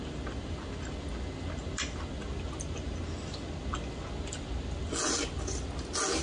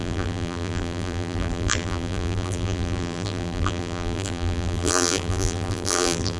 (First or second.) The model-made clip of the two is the second